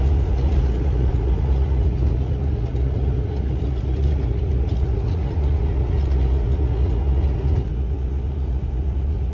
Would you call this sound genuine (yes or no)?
no